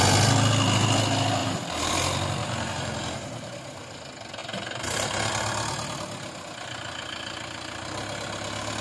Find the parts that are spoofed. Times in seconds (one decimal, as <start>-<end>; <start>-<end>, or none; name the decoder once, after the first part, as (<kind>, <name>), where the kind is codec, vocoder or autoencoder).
1.4-1.9 (vocoder, BigVGAN v2); 2.4-3.5; 4.4-5.3